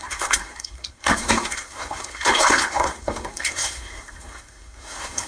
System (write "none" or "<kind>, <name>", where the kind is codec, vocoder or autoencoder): codec, SNAC